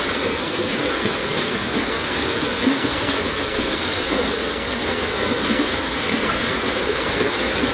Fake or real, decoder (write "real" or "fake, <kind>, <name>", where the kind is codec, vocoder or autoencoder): fake, codec, SNAC